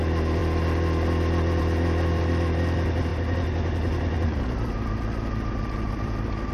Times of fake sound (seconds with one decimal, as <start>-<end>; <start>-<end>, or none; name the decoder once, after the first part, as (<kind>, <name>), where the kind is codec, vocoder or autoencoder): none